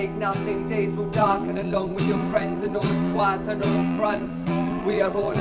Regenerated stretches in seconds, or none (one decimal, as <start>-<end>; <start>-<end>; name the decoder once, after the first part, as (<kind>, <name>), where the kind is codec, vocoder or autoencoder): 1.2-3.2 (vocoder, Vocos); 3.6-5.4